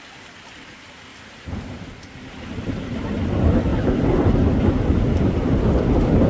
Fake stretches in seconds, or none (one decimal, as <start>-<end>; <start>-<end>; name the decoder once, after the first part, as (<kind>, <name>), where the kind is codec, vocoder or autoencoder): 0.0-3.7 (vocoder, BigVGAN v2); 4.9-6.3